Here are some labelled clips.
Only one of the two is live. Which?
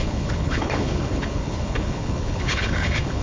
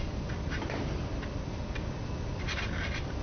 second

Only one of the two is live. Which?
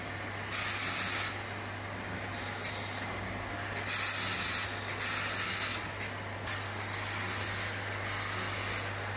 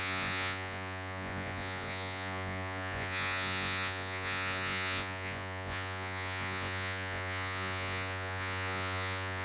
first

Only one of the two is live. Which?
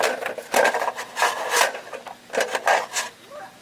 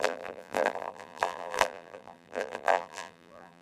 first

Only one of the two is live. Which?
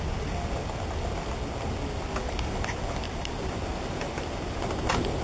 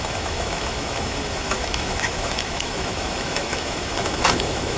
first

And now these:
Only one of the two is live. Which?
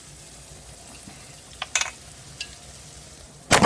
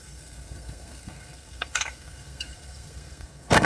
first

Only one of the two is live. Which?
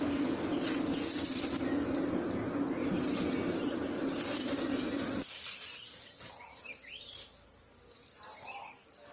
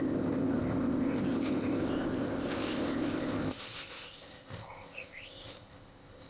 first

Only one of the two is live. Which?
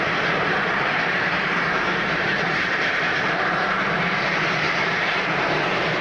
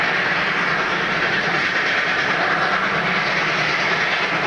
second